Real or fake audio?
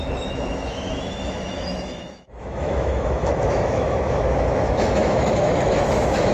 fake